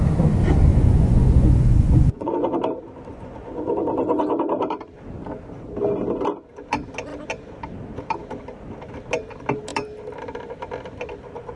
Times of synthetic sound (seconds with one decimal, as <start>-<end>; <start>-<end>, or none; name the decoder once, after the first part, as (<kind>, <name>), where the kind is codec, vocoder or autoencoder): 0.7-2.3 (vocoder, Vocos); 3.1-3.7